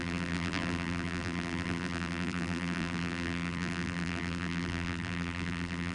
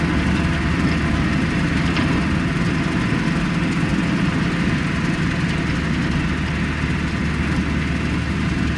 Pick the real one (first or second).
second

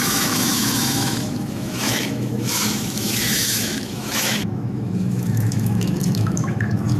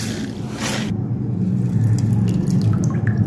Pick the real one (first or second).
second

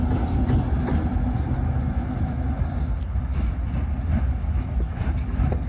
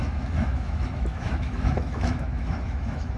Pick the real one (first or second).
first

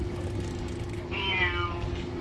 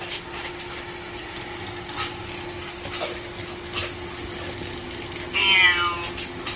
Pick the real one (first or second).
second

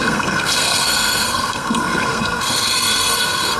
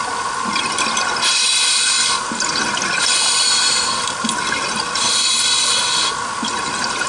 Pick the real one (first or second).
second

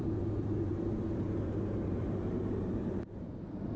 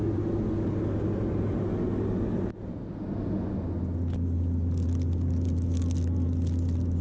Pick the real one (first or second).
second